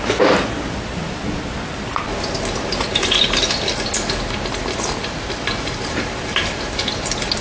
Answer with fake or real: real